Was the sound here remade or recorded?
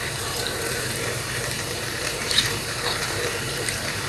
remade